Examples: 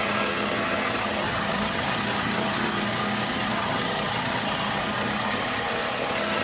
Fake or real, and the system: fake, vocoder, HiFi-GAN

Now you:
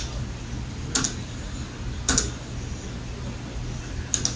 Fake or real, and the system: real